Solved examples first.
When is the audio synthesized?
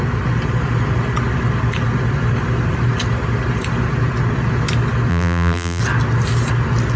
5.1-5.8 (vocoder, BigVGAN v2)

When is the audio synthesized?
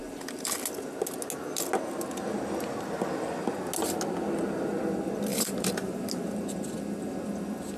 5.3-6.0 (vocoder, BigVGAN v2)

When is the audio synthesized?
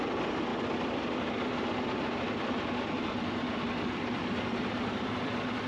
0.0-5.7 (vocoder, BigVGAN v2)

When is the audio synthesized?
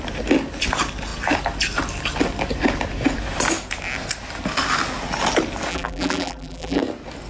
5.7-6.8 (vocoder, BigVGAN v2)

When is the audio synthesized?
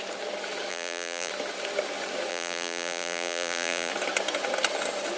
0.7-1.3 (vocoder, BigVGAN v2); 2.3-3.9